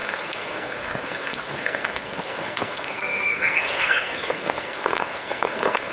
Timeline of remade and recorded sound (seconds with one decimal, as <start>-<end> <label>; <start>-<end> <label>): 0.0-5.9 remade